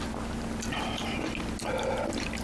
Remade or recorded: recorded